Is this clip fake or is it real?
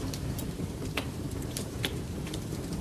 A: fake